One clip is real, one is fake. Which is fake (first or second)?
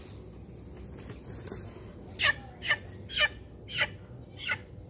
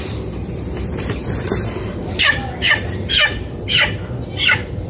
second